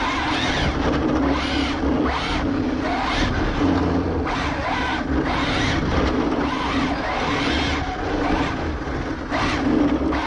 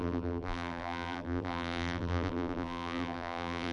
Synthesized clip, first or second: second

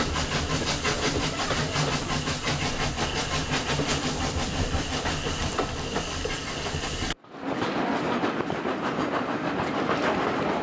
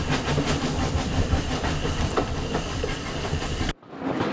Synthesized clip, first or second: second